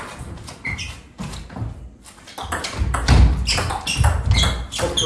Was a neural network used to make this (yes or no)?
no